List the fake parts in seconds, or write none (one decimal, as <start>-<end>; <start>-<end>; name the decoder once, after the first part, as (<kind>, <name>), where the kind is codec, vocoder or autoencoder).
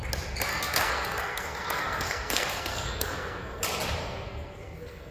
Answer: 0.5-3.6 (codec, SNAC); 4.0-5.1